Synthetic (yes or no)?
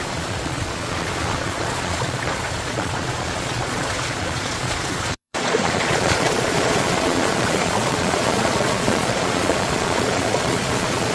yes